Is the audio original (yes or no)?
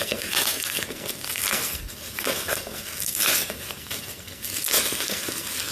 no